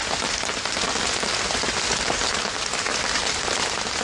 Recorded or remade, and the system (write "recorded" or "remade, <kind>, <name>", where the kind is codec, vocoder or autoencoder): recorded